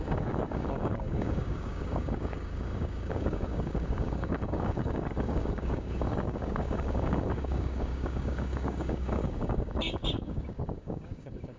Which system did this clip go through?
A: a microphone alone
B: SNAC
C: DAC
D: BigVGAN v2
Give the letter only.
C